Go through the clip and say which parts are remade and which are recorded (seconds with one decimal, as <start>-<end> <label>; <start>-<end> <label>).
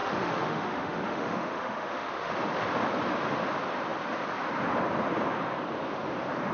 0.0-2.3 remade; 2.3-6.5 recorded